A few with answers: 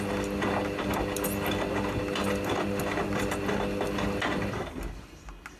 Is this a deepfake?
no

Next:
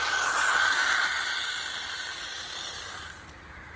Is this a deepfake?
no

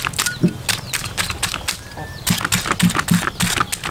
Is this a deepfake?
no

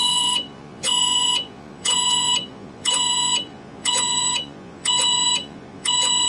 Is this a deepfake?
yes